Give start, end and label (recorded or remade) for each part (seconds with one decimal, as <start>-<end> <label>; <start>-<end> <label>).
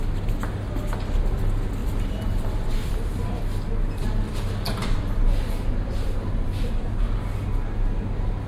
0.0-1.8 recorded; 1.8-3.4 remade; 3.4-4.8 recorded; 4.8-7.2 remade; 7.2-8.5 recorded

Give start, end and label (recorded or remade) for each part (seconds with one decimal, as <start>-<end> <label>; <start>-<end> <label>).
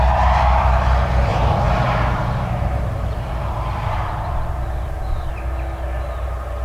0.0-1.3 recorded; 1.3-5.3 remade; 5.3-6.6 recorded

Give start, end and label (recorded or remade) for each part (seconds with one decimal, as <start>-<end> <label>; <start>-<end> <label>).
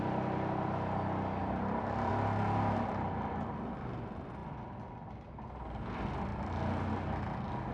0.0-1.4 recorded; 1.4-2.1 remade; 2.1-6.3 recorded; 6.3-6.9 remade; 6.9-7.7 recorded